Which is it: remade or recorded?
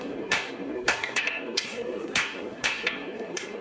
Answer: remade